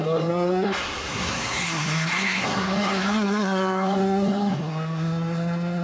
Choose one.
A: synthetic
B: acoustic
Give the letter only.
A